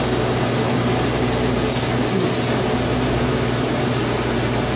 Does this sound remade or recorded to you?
recorded